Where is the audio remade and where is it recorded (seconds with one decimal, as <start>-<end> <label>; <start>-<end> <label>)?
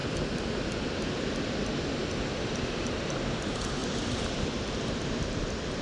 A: 0.0-1.0 remade; 1.0-3.8 recorded; 3.8-5.1 remade; 5.1-5.8 recorded